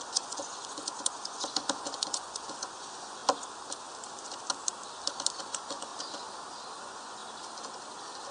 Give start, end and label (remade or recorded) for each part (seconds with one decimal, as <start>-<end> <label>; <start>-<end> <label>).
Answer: 0.0-3.2 remade; 3.2-5.4 recorded; 5.4-5.9 remade; 5.9-6.8 recorded; 6.8-7.2 remade; 7.2-8.3 recorded